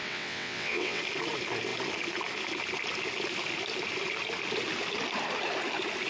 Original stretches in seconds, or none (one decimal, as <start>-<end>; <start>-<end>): 1.0-6.1